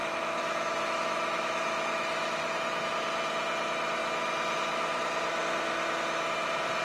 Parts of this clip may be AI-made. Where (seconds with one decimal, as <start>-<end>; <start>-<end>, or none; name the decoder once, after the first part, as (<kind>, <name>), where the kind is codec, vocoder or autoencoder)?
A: 0.0-2.9 (autoencoder, DAC-VAE)